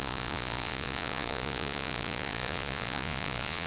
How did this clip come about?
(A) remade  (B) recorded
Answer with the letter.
A